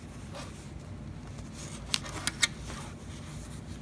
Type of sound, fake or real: real